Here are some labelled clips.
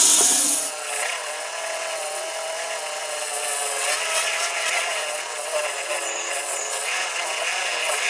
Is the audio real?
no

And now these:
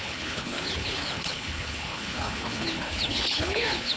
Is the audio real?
no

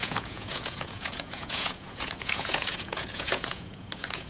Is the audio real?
no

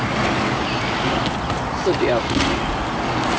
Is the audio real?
yes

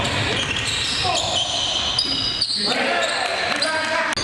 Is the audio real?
yes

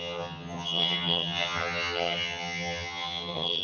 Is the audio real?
no